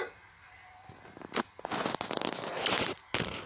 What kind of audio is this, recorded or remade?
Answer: recorded